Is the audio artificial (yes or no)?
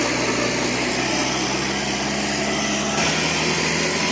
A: no